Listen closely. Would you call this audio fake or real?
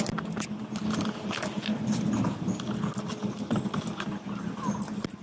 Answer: real